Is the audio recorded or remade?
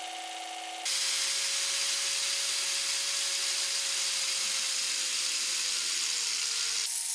recorded